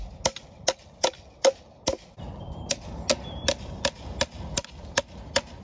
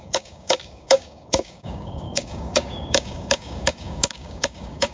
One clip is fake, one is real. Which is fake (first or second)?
second